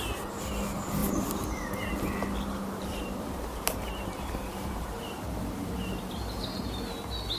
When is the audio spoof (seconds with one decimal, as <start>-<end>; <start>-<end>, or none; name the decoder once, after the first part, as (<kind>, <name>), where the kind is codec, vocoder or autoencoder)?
1.0-1.9 (vocoder, BigVGAN v2); 2.6-5.0